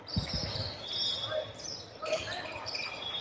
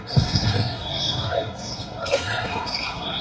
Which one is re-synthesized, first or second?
second